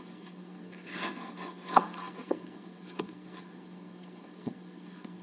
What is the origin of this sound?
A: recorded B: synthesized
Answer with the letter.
B